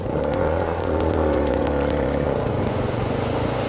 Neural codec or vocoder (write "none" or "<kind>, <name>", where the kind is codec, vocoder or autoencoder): vocoder, Vocos